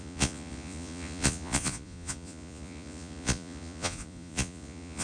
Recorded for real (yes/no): no